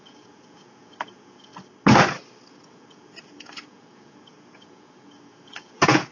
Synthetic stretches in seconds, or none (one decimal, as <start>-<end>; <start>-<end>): 0.0-1.5; 2.5-6.1